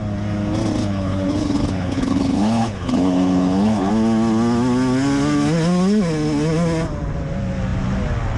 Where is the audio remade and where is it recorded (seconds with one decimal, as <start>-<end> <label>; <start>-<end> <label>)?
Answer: 0.0-0.8 recorded; 0.8-3.9 remade; 3.9-8.4 recorded